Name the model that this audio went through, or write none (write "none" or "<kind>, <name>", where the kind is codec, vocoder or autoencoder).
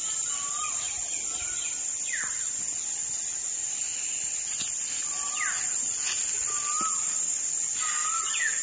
none